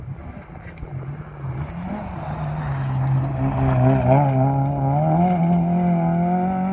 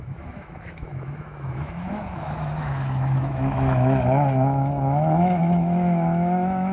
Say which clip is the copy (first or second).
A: second